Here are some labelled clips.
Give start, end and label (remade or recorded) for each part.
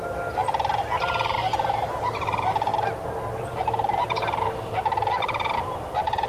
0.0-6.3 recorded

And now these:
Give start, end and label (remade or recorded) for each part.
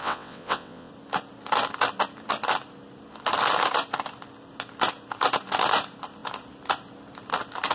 0.0-0.9 remade; 0.9-7.7 recorded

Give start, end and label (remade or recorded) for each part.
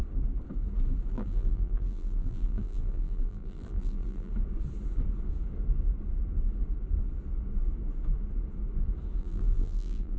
0.0-1.1 recorded; 1.1-4.3 remade; 4.3-9.2 recorded; 9.2-10.2 remade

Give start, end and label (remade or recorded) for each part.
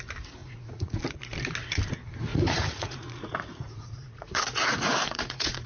0.0-0.4 recorded; 0.4-1.0 remade; 1.0-2.3 recorded; 2.3-5.7 remade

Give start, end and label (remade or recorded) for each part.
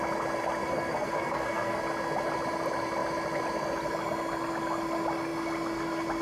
0.0-0.7 recorded; 0.7-1.8 remade; 1.8-6.2 recorded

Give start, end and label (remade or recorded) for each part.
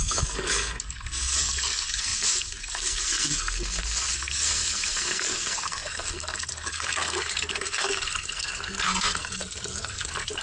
0.0-10.4 remade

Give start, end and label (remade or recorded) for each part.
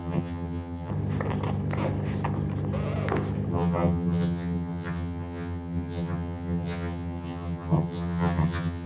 0.0-0.9 remade; 0.9-3.5 recorded; 3.5-8.9 remade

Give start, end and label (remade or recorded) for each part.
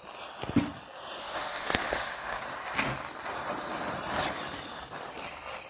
0.0-1.2 recorded; 1.2-2.4 remade; 2.4-5.7 recorded